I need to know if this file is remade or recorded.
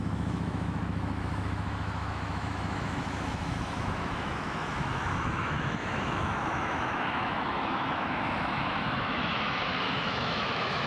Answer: remade